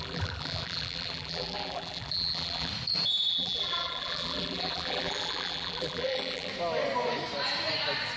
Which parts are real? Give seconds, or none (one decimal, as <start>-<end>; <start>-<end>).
2.7-3.3; 6.5-8.2

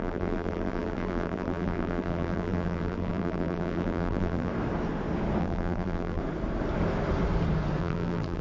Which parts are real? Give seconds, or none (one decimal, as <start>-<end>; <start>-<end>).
4.5-5.4; 6.2-7.8